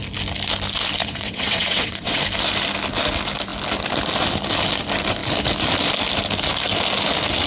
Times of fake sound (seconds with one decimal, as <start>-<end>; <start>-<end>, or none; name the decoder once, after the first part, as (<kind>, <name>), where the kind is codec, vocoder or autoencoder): 1.0-2.2 (vocoder, WaveNeXt)